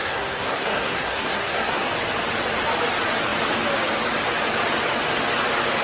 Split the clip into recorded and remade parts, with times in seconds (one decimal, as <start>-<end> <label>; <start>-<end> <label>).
0.0-1.9 remade; 1.9-5.8 recorded